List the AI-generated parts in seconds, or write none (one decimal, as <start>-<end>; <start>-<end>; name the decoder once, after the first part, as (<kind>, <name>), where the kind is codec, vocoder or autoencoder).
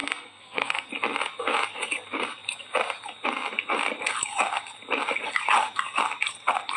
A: 0.0-0.9 (codec, SNAC)